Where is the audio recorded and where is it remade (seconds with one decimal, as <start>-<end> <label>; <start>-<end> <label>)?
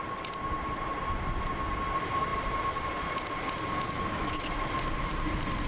0.0-3.8 recorded; 3.8-4.5 remade; 4.5-5.7 recorded